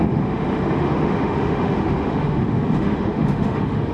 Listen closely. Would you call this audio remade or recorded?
remade